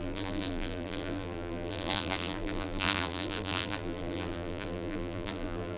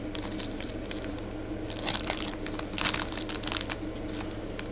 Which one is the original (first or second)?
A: second